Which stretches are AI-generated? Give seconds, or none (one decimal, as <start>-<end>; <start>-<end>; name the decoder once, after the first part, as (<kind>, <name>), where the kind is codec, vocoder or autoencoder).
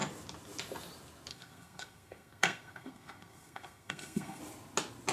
1.3-4.4 (codec, SNAC)